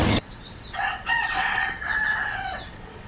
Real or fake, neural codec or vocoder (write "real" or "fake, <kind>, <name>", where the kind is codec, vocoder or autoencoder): fake, vocoder, WaveNeXt